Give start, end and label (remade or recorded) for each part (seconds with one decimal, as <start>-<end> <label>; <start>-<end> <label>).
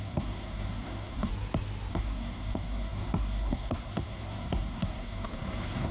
0.0-1.3 remade; 1.3-1.9 recorded; 1.9-5.9 remade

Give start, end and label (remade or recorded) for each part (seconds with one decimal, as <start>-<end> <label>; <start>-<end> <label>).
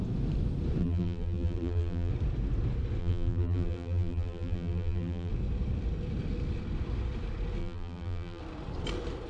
0.0-0.8 recorded; 0.8-2.1 remade; 2.1-3.0 recorded; 3.0-5.3 remade; 5.3-7.6 recorded; 7.6-8.4 remade; 8.4-9.3 recorded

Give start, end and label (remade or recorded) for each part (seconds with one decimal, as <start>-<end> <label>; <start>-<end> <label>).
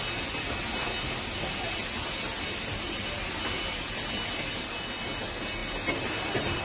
0.0-6.6 recorded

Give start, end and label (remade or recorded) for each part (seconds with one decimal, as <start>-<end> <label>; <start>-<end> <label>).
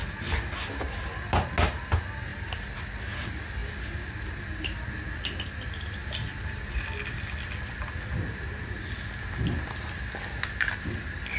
0.0-11.4 recorded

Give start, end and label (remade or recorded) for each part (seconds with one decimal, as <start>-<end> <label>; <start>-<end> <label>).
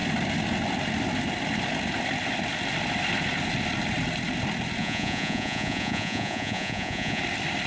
0.0-4.8 recorded; 4.8-7.2 remade; 7.2-7.7 recorded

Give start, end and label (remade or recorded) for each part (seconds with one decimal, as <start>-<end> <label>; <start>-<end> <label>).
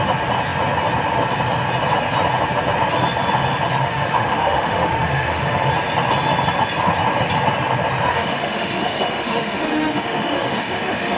0.0-3.8 recorded; 3.8-5.7 remade; 5.7-8.1 recorded; 8.1-11.2 remade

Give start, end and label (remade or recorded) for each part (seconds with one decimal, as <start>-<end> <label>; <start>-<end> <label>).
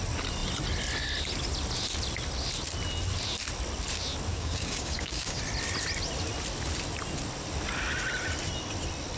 0.0-4.3 recorded; 4.3-5.4 remade; 5.4-9.2 recorded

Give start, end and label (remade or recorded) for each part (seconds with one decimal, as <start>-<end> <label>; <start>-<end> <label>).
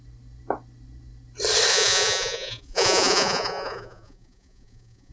0.0-1.7 recorded; 1.7-5.1 remade